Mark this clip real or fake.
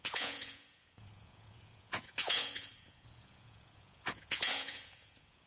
fake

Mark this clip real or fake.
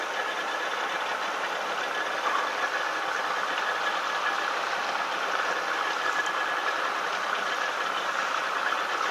real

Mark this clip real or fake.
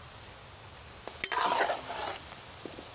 real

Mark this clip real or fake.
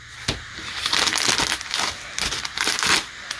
real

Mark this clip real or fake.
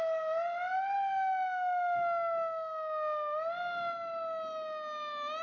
real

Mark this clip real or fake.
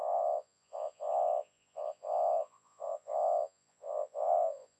fake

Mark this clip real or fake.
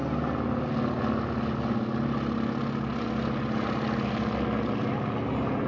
real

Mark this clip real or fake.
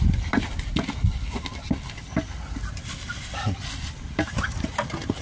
real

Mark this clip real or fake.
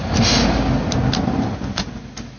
real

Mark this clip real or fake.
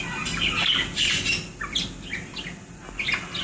real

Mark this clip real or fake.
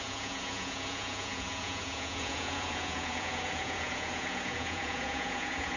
fake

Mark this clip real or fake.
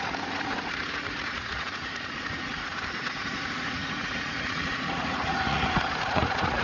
fake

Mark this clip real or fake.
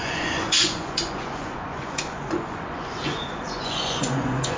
fake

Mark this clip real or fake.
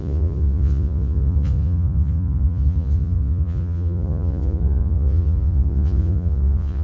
fake